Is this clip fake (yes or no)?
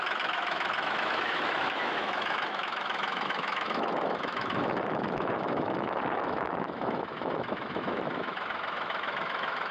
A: yes